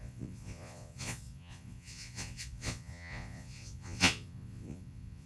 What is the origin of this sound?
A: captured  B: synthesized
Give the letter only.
B